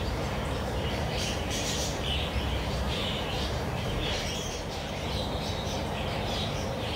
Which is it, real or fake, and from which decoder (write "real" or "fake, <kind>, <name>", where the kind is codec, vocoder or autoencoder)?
fake, vocoder, BigVGAN v2